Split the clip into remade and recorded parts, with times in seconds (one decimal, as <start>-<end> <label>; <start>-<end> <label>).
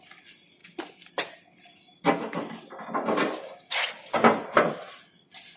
0.0-5.6 recorded